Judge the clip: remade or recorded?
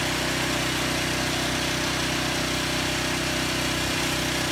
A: recorded